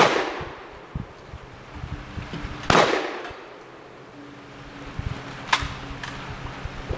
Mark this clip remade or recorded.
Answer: recorded